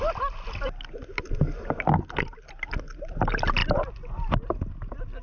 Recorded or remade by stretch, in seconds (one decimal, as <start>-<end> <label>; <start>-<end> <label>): 0.0-5.2 recorded